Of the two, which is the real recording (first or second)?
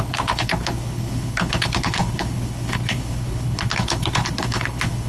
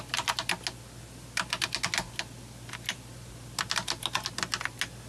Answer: second